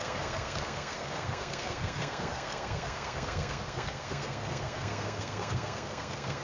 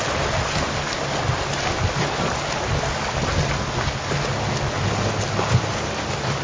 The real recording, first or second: second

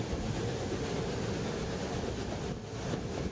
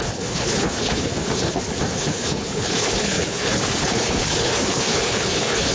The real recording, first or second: first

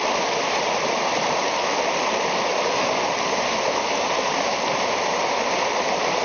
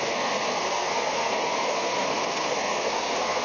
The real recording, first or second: first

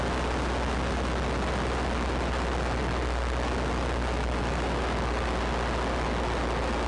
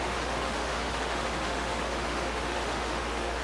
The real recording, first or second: first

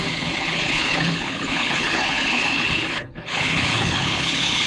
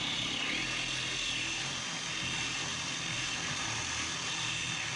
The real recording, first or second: second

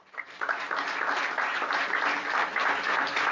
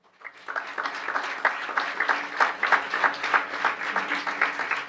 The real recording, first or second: second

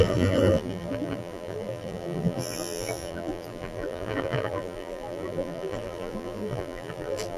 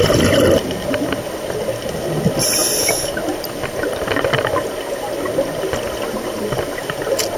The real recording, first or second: second